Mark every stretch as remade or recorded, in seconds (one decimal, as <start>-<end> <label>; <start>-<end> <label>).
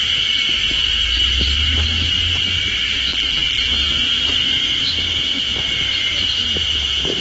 0.0-3.1 recorded; 3.1-3.7 remade; 3.7-7.2 recorded